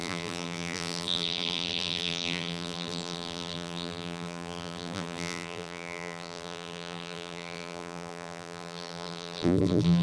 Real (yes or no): no